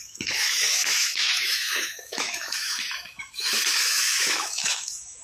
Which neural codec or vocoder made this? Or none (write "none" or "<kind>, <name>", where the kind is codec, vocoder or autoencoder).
autoencoder, DAC-VAE